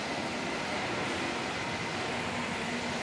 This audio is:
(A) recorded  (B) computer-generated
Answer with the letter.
A